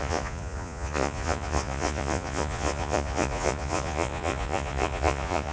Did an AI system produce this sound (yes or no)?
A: yes